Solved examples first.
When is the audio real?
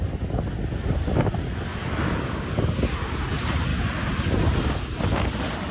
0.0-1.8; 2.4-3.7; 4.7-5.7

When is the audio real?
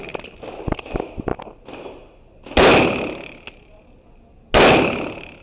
0.0-5.4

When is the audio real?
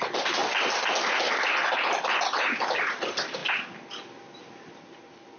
0.4-2.2; 3.4-4.3